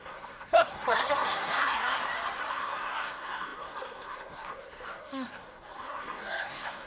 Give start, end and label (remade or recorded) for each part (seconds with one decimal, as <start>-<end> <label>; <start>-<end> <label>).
0.0-2.0 remade; 2.0-2.5 recorded; 2.5-6.9 remade